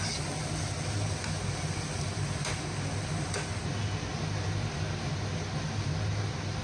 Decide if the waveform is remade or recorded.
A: recorded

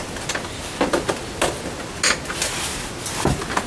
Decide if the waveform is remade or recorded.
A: recorded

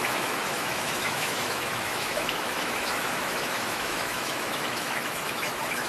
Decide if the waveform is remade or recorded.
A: remade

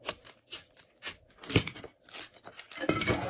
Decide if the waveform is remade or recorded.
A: recorded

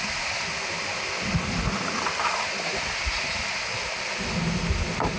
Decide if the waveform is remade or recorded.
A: recorded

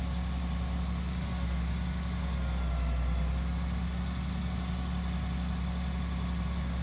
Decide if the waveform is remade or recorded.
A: recorded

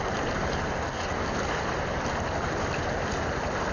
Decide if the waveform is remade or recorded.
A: recorded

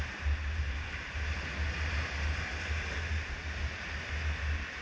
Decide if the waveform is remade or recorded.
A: recorded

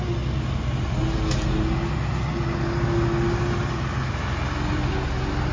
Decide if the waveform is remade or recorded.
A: recorded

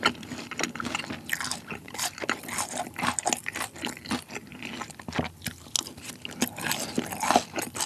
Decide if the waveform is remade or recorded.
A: recorded